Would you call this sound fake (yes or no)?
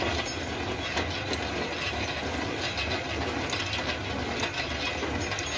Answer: no